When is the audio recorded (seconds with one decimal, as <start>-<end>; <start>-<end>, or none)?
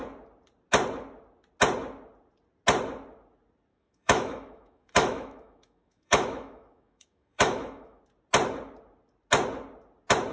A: 0.0-3.7; 8.0-10.3